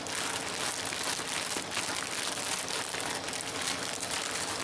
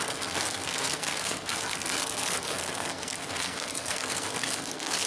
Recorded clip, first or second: first